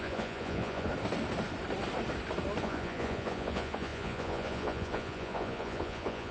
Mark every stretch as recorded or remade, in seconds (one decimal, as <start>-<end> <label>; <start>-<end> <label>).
0.0-0.9 remade; 0.9-2.6 recorded; 2.6-6.3 remade